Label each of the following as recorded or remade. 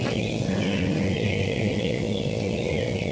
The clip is remade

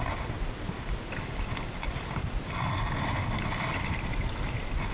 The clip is recorded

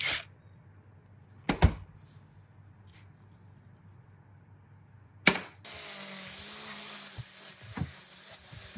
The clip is recorded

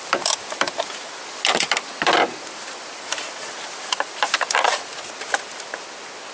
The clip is recorded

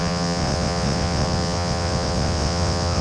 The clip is remade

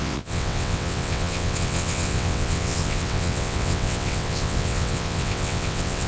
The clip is remade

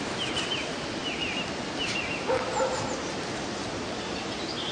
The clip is recorded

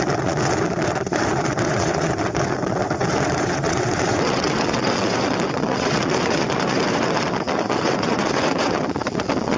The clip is remade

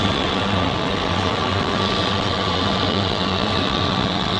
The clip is remade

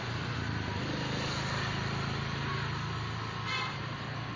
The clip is recorded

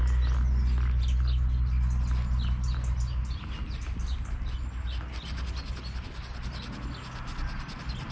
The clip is recorded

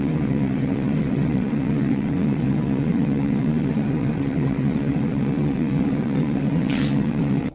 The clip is remade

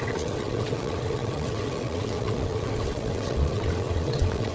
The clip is remade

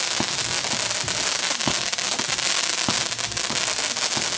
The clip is recorded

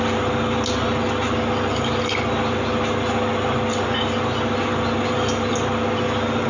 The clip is recorded